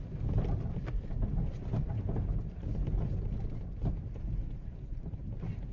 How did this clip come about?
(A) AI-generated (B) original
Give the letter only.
B